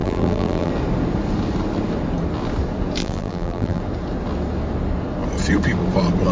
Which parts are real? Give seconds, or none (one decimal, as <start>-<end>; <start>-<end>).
0.7-3.0; 3.8-6.3